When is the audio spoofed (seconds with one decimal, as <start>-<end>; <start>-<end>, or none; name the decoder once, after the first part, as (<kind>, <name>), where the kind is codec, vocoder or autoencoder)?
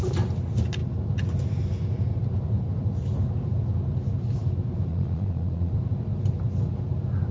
4.9-5.7 (vocoder, Vocos)